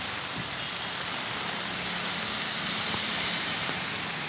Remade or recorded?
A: recorded